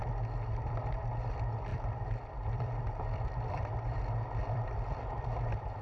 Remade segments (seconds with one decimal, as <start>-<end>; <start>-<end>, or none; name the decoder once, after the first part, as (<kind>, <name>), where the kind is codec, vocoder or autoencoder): 0.7-5.8 (vocoder, BigVGAN v2)